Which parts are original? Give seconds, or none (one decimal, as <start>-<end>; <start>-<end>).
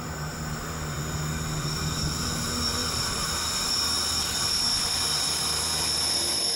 0.0-2.8; 3.5-6.6